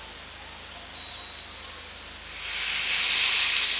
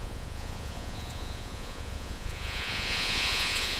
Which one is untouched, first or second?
first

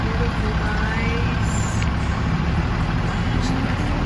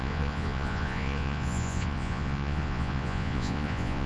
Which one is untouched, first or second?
first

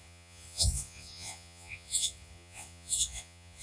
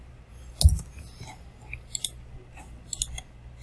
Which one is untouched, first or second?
second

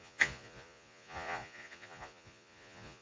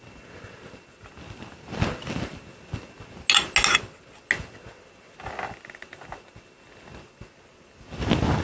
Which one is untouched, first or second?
second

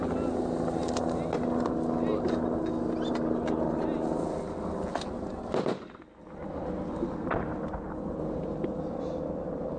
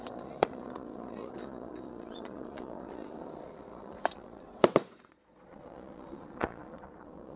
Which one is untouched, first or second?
first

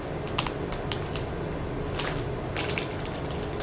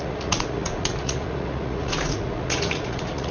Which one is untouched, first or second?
first